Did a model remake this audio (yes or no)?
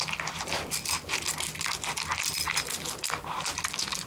no